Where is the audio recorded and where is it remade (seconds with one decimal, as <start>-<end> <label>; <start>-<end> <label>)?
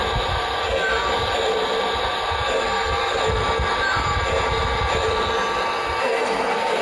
0.0-0.6 recorded; 0.6-1.1 remade; 1.1-2.6 recorded; 2.6-3.2 remade; 3.2-6.0 recorded; 6.0-6.8 remade